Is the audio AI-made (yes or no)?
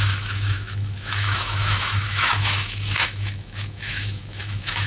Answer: yes